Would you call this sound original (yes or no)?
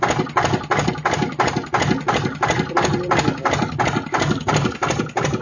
yes